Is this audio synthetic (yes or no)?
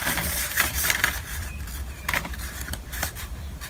yes